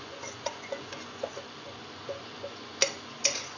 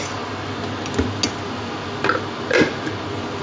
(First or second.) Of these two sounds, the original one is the second